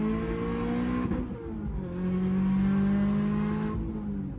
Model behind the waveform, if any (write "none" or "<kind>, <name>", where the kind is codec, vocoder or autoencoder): none